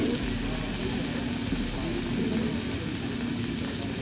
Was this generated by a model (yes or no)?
no